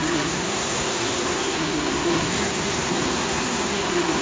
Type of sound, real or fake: fake